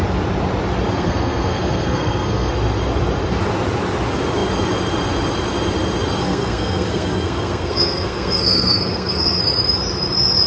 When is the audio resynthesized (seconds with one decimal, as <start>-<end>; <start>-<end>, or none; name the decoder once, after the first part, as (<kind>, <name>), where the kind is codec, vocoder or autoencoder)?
1.0-2.5 (codec, SNAC); 6.2-9.4